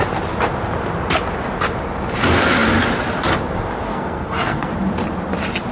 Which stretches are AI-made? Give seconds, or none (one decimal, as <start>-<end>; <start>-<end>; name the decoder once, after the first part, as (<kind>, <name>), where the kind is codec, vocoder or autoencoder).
3.9-4.7 (codec, SNAC)